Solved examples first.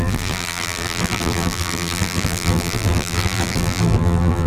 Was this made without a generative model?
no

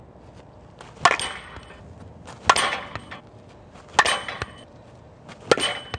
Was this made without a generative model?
yes